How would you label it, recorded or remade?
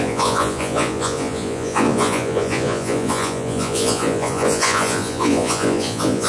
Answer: remade